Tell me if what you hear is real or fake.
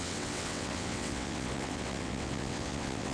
fake